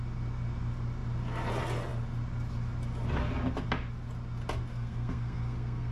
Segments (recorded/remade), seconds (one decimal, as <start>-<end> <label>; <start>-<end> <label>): 0.0-4.7 recorded; 4.7-5.9 remade